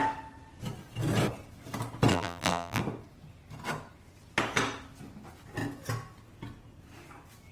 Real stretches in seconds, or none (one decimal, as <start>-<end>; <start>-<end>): 0.0-2.1; 2.8-7.5